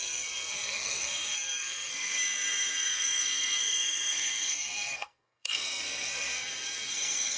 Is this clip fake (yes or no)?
yes